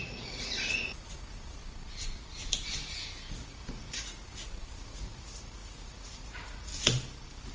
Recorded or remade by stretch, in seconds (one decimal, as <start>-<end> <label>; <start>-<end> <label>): 0.0-1.6 remade; 1.6-3.4 recorded; 3.4-6.7 remade; 6.7-7.5 recorded